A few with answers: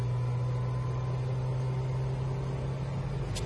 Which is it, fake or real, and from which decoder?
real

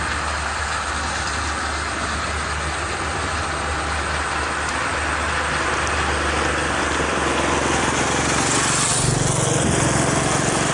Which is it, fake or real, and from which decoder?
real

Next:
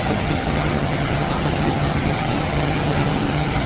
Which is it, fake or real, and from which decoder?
fake, vocoder, HiFi-GAN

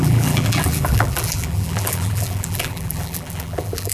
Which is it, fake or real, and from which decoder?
fake, vocoder, BigVGAN v2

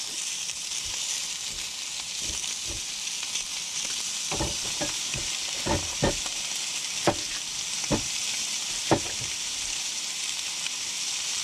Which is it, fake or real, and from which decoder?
real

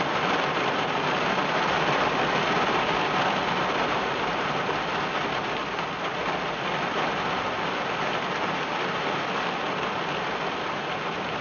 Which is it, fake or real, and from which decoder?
real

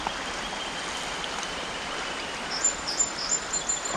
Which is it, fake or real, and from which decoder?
fake, vocoder, BigVGAN v2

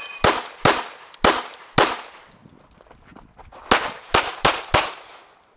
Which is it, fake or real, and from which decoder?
real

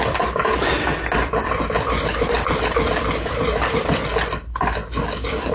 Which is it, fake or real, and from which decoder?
real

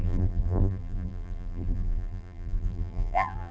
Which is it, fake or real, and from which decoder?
fake, vocoder, BigVGAN v2